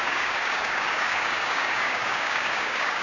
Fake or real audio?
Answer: fake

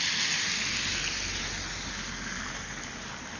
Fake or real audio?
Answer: real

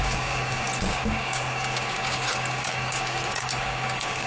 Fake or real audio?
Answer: fake